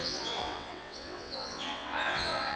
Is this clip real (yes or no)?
no